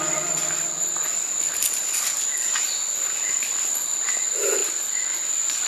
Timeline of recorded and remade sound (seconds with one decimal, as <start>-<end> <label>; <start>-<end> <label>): 0.0-5.7 recorded